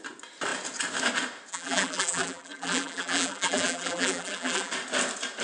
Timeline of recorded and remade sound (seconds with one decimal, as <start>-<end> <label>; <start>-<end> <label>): 0.0-1.5 recorded; 1.5-4.7 remade; 4.7-5.4 recorded